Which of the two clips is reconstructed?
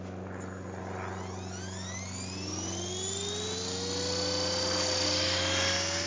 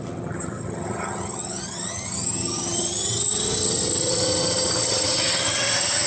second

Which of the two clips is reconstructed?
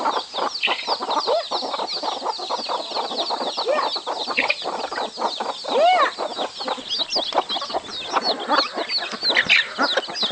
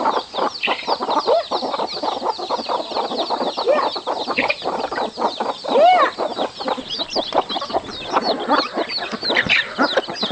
second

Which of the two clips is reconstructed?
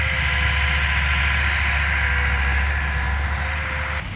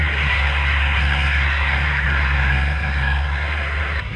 second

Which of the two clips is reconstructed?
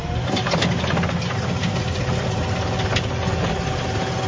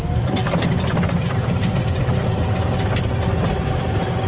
second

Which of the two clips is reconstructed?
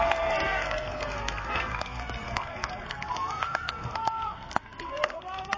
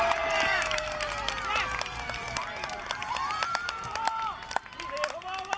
first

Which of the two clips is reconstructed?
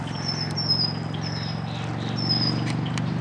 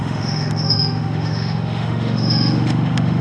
second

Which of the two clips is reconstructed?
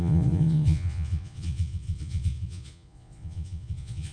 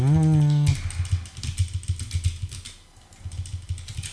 first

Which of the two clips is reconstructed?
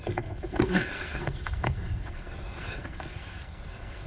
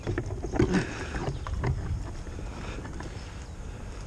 first